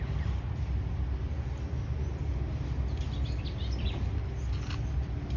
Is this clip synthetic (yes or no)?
no